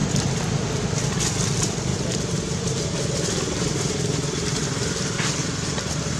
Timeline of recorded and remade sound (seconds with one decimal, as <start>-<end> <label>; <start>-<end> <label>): 0.0-1.2 remade; 1.2-1.9 recorded; 1.9-3.0 remade; 3.0-4.6 recorded; 4.6-5.8 remade; 5.8-6.2 recorded